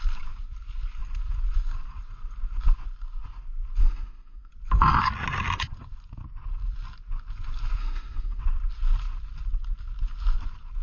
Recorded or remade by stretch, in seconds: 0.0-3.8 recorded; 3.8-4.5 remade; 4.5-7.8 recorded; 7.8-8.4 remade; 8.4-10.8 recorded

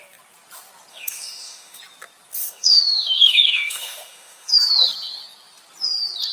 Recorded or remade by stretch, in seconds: 0.0-0.9 recorded; 0.9-1.8 remade; 1.8-2.4 recorded; 2.4-4.5 remade; 4.5-6.3 recorded

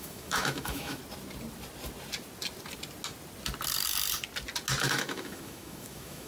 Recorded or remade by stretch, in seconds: 0.0-1.0 remade; 1.0-4.8 recorded; 4.8-6.3 remade

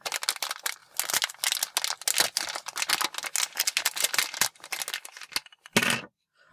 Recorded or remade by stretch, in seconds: 0.0-6.5 recorded